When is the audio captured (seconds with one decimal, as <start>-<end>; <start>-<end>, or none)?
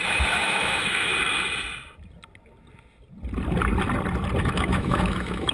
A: 1.1-4.4